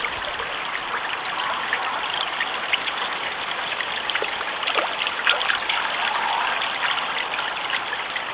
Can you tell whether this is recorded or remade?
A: recorded